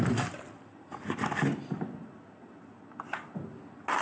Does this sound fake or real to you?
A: real